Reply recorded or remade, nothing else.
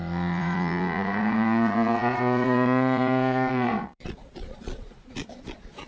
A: remade